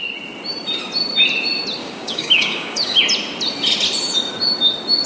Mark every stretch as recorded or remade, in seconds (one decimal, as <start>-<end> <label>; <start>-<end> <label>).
0.0-1.8 recorded; 1.8-3.0 remade; 3.0-5.1 recorded